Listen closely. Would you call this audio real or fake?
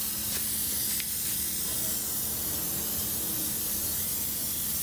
real